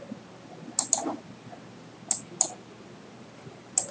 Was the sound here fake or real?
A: real